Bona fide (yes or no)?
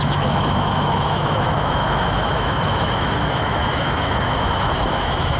no